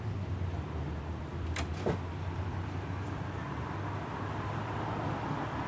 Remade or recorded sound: remade